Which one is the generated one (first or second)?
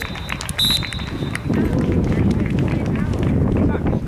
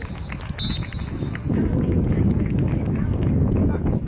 second